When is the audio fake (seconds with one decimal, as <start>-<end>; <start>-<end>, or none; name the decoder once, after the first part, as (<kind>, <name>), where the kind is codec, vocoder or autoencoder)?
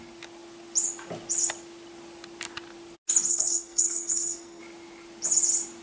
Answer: 3.3-4.6 (codec, SNAC)